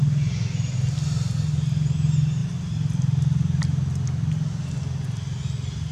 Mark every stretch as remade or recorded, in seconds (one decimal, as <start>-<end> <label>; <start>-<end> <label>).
0.0-5.9 recorded